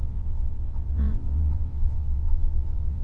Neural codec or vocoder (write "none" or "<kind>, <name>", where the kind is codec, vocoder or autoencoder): vocoder, WaveNeXt